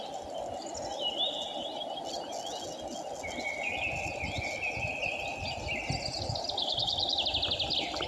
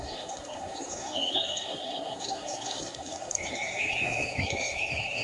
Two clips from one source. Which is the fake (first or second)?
second